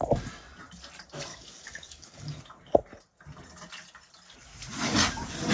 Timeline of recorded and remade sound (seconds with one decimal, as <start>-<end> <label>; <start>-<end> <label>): 0.0-1.3 recorded; 1.3-2.4 remade; 2.4-5.5 recorded